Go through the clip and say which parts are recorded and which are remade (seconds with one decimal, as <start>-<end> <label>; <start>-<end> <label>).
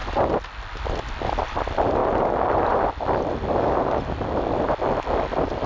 0.0-5.7 recorded